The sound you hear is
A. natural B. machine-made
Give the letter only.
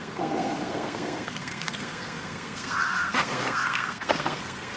B